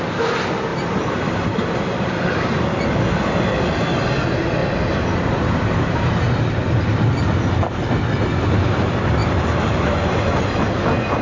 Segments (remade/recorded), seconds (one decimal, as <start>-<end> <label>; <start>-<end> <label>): 0.0-0.7 recorded; 0.7-2.5 remade; 2.5-4.6 recorded; 4.6-6.1 remade; 6.1-9.2 recorded; 9.2-10.2 remade; 10.2-11.2 recorded